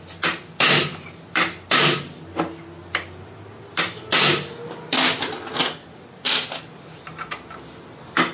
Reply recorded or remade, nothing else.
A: recorded